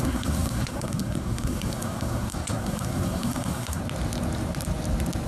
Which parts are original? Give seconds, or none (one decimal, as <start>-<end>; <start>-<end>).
3.8-5.3

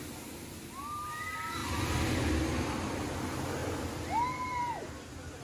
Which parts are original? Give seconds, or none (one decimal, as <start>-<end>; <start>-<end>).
0.0-5.4

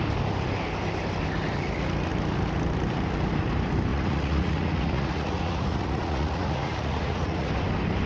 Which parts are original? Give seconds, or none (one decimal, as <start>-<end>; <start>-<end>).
0.0-3.9; 7.5-8.1